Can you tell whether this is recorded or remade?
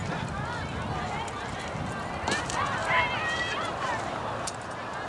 recorded